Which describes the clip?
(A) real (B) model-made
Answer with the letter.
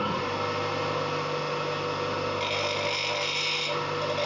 A